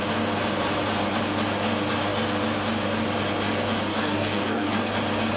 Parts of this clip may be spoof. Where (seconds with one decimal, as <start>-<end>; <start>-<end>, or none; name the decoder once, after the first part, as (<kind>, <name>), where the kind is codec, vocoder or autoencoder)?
3.9-4.9 (codec, DAC)